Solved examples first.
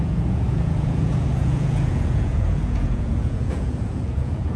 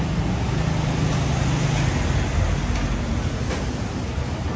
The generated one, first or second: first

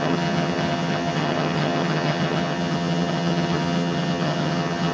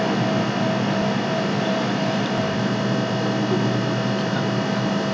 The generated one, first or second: first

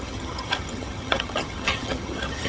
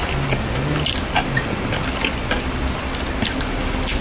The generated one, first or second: first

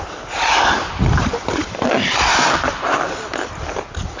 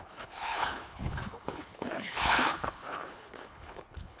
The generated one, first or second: second